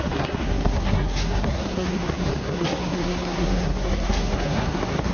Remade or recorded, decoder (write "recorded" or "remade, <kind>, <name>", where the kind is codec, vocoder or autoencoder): remade, codec, SNAC